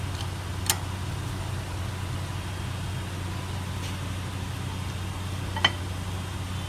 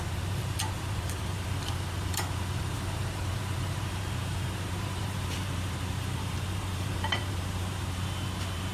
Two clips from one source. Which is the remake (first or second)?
second